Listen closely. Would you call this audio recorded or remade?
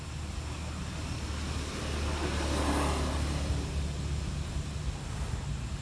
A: recorded